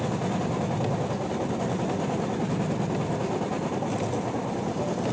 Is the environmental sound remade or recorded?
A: recorded